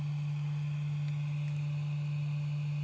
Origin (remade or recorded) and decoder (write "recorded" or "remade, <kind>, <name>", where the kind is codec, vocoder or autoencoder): recorded